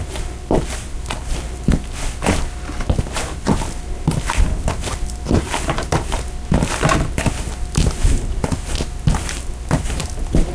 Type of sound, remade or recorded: recorded